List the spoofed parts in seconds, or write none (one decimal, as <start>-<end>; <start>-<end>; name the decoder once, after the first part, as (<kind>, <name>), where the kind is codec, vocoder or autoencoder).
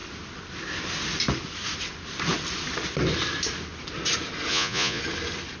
4.5-5.0 (vocoder, Vocos)